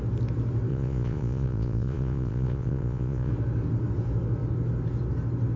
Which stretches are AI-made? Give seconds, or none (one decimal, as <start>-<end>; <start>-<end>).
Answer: 0.7-3.3